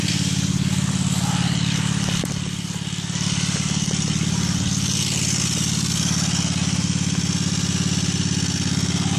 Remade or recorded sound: recorded